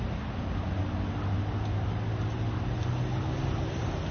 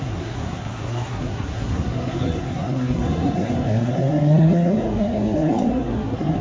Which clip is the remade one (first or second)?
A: second